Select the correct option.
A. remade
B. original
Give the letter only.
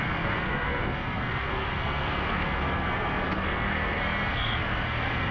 A